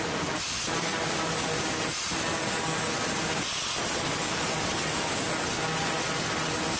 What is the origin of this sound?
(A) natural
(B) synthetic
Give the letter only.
A